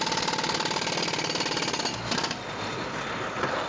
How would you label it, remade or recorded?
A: recorded